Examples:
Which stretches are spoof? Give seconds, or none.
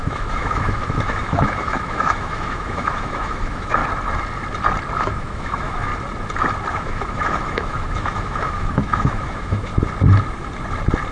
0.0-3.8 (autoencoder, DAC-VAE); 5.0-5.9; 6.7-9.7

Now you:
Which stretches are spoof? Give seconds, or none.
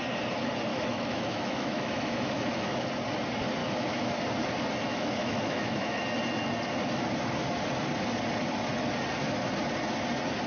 0.7-2.9 (autoencoder, DAC-VAE); 3.6-4.2; 4.9-6.0